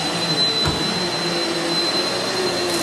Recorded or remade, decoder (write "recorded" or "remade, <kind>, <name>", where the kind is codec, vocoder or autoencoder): recorded